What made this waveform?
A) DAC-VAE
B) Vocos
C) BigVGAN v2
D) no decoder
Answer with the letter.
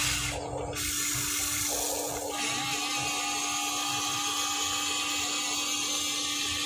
D